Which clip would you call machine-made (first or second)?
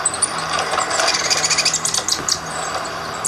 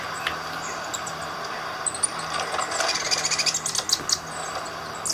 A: first